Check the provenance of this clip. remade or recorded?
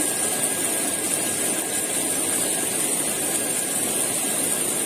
recorded